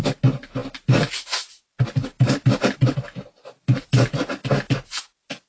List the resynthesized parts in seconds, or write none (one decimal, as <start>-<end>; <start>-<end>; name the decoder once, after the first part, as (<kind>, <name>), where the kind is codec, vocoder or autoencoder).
none